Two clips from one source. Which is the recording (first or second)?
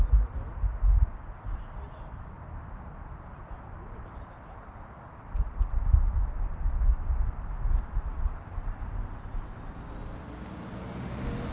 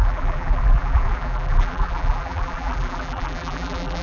first